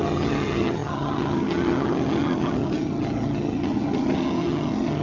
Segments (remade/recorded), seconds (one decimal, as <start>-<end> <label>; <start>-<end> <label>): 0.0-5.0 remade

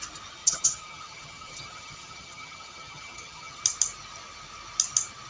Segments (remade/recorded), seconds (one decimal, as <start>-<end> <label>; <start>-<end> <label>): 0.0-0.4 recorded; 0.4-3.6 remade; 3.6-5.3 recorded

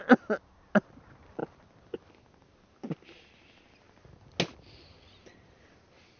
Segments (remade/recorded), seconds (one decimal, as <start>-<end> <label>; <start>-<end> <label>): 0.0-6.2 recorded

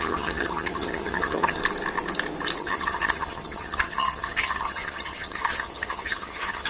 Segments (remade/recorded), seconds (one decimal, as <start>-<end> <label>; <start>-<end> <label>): 0.0-1.6 remade; 1.6-2.6 recorded; 2.6-6.7 remade